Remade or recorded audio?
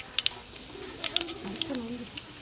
recorded